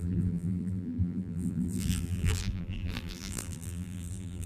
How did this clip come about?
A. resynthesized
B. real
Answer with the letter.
A